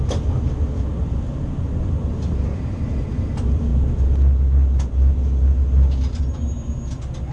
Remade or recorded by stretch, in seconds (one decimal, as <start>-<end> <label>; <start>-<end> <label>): 0.0-7.3 recorded